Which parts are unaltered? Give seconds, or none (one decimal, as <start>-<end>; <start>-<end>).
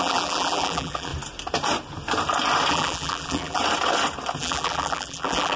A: 1.1-2.7; 3.6-4.4